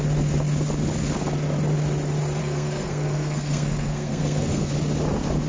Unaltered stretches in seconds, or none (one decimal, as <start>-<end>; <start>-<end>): 0.0-2.4; 4.7-5.5